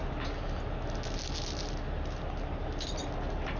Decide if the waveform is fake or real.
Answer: real